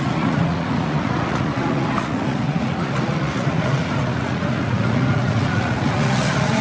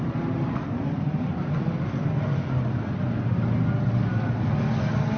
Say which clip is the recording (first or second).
second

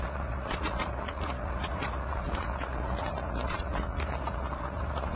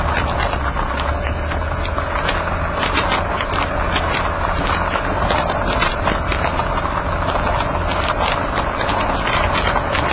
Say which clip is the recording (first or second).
second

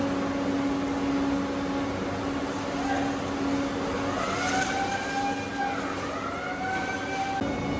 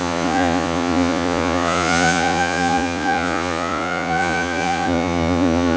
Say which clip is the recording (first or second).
first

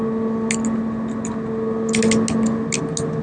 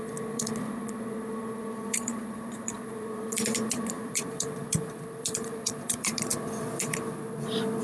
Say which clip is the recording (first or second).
first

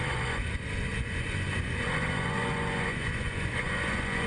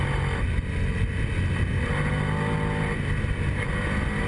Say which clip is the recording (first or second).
second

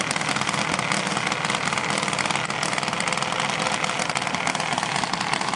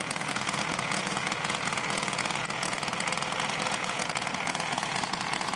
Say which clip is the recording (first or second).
first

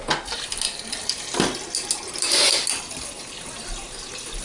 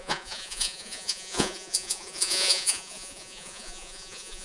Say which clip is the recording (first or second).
first